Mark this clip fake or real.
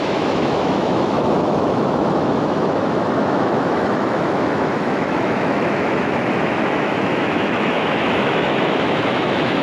fake